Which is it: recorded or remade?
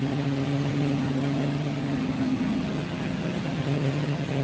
remade